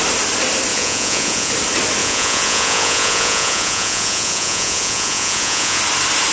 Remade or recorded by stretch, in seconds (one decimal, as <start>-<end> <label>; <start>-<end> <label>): 0.0-0.7 recorded; 0.7-1.5 remade; 1.5-2.0 recorded; 2.0-5.8 remade; 5.8-6.3 recorded